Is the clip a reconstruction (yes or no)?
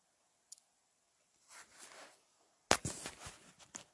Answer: no